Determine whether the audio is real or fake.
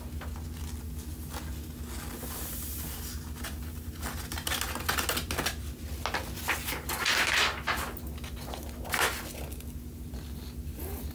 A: real